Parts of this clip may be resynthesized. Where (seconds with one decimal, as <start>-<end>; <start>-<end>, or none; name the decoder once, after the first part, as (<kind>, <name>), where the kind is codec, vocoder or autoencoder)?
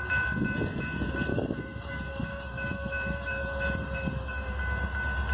1.3-4.5 (autoencoder, DAC-VAE)